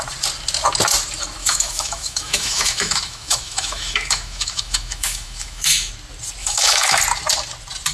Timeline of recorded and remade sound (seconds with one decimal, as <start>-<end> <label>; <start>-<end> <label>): 0.0-1.4 recorded; 1.4-5.9 remade; 5.9-6.4 recorded; 6.4-7.0 remade; 7.0-7.9 recorded